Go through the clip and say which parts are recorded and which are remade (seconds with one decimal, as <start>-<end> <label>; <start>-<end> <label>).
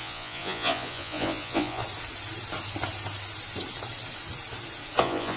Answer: 0.0-1.8 remade; 1.8-5.0 recorded; 5.0-5.4 remade